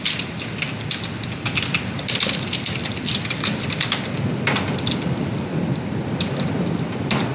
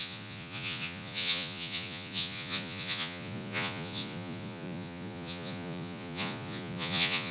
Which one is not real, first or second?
second